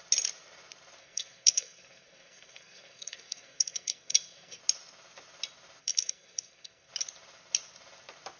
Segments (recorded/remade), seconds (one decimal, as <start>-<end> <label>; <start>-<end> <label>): 0.0-1.0 recorded; 1.0-4.6 remade; 4.6-5.8 recorded; 5.8-6.9 remade; 6.9-8.4 recorded